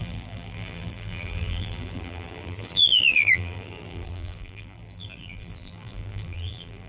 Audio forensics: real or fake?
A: fake